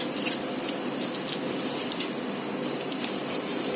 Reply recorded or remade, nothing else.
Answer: recorded